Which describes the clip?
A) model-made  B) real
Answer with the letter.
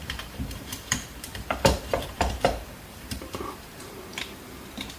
A